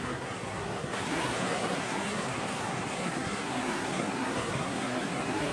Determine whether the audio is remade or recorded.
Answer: remade